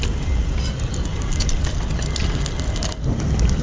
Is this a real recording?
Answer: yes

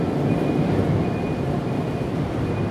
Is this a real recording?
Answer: yes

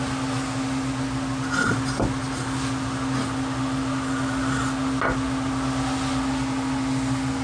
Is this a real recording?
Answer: yes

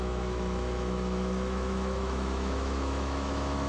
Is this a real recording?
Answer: no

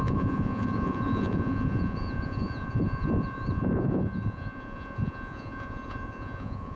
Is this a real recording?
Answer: no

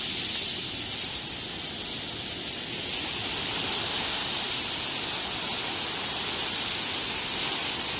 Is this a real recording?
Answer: yes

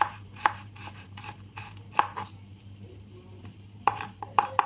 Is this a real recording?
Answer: no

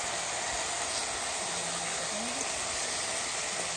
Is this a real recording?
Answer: yes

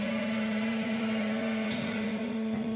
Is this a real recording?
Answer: no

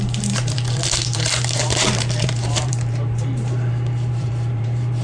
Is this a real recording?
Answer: no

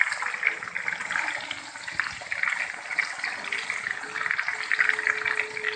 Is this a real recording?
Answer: yes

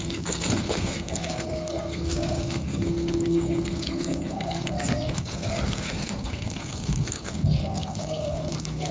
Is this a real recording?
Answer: no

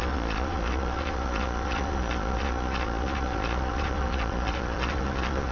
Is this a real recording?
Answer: no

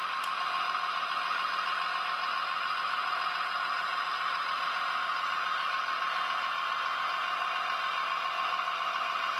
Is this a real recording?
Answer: yes